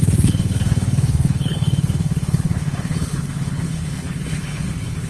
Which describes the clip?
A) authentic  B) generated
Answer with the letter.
B